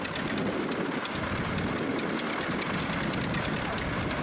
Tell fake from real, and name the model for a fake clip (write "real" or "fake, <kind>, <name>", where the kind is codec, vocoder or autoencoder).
real